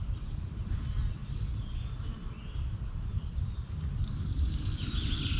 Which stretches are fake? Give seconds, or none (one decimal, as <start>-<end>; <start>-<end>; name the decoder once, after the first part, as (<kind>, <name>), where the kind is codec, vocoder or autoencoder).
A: none